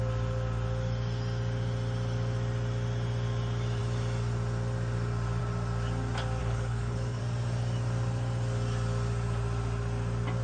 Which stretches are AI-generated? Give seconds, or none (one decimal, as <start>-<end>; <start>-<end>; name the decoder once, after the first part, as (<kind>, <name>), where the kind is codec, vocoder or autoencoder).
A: 6.4-7.2 (codec, HILCodec)